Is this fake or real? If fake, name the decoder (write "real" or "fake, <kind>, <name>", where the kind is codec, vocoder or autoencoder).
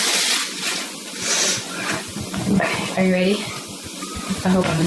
fake, vocoder, Vocos